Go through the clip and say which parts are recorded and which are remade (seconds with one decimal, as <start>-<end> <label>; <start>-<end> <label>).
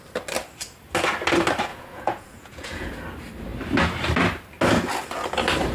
0.0-1.7 recorded; 1.7-2.9 remade; 2.9-5.7 recorded